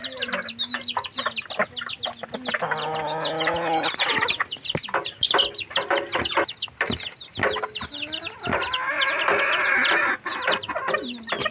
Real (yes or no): yes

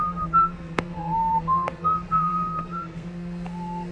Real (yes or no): no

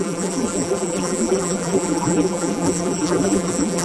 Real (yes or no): no